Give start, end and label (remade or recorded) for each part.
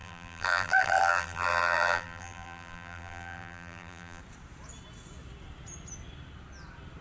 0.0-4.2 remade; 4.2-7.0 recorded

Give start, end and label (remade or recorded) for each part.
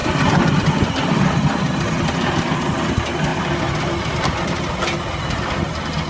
0.0-3.3 recorded; 3.3-4.7 remade; 4.7-6.1 recorded